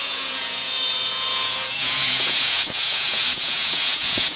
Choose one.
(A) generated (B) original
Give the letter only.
A